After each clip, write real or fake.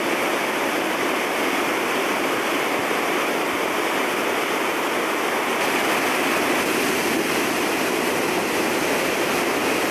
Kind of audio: real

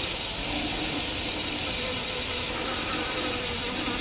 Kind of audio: real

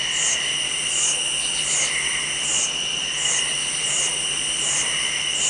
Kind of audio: real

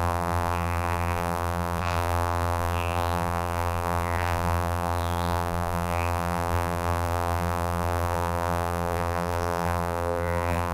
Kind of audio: fake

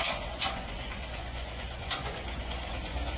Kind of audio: fake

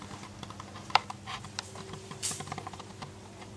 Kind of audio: fake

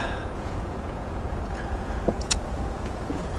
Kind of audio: fake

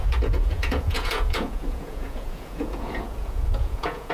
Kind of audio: fake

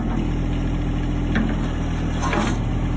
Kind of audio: real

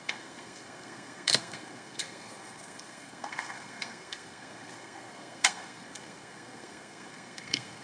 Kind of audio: fake